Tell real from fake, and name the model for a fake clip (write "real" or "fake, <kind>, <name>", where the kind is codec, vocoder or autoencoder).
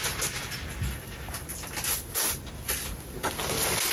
real